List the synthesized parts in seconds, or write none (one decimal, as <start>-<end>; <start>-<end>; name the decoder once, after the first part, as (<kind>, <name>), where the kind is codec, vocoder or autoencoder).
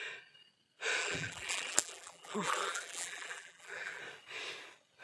1.0-4.0 (vocoder, BigVGAN v2)